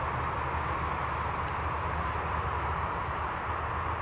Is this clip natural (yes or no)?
yes